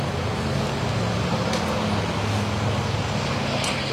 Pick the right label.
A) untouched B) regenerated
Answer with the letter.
A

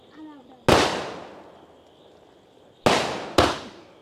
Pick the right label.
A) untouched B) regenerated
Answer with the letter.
A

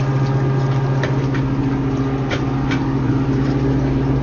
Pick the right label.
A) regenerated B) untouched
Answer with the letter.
B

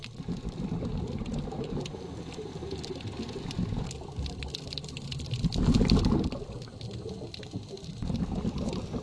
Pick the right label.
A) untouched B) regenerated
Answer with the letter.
A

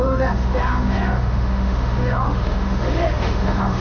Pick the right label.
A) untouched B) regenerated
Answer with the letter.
B